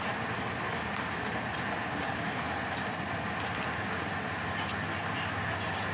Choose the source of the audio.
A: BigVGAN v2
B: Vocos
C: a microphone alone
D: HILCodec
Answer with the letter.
C